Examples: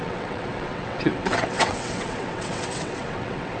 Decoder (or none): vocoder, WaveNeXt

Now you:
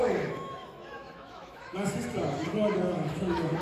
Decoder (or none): autoencoder, DAC-VAE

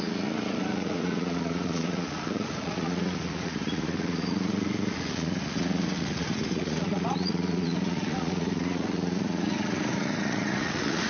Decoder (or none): vocoder, Vocos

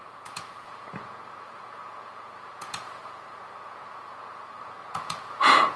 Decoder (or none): vocoder, Vocos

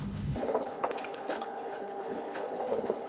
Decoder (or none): codec, HILCodec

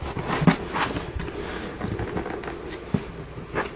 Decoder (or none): none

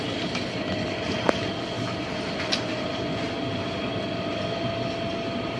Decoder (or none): none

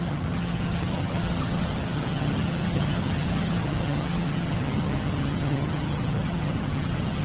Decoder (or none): vocoder, HiFi-GAN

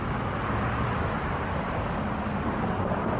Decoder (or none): none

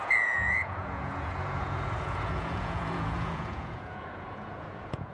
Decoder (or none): vocoder, Vocos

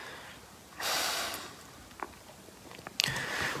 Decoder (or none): none